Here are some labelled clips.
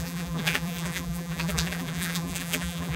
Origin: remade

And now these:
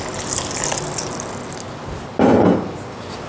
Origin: recorded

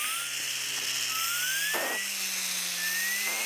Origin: recorded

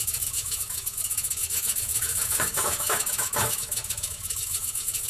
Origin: remade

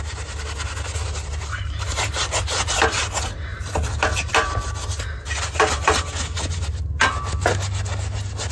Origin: recorded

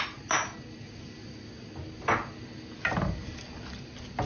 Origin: recorded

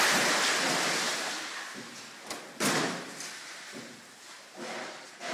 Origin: recorded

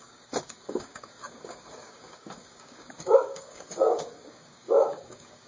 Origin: remade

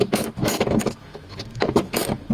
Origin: remade